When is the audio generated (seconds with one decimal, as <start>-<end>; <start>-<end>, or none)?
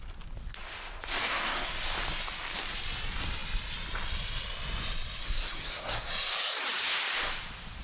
1.2-1.7; 5.2-6.1